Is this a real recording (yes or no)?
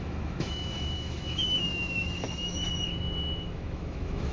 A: no